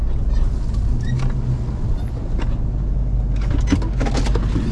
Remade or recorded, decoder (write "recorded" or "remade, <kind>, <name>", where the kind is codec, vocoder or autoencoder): recorded